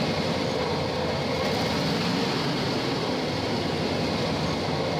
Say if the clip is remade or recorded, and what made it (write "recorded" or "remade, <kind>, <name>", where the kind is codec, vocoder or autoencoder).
recorded